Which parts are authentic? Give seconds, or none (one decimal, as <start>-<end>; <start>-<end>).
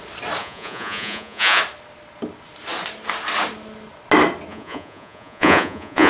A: 0.0-0.4; 1.6-4.5